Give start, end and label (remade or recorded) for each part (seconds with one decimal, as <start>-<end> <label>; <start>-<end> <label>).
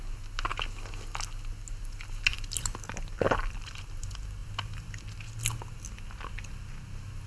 0.0-2.3 recorded; 2.3-3.8 remade; 3.8-4.4 recorded; 4.4-5.0 remade; 5.0-7.3 recorded